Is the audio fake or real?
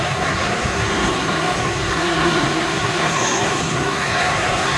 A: fake